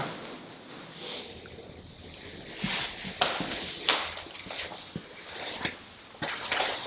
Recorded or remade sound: recorded